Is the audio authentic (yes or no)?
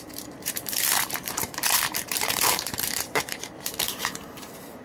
no